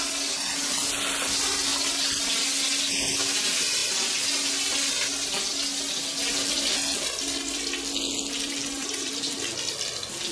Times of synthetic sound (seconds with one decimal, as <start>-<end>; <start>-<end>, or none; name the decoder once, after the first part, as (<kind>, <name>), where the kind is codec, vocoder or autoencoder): 8.8-9.3 (vocoder, BigVGAN v2)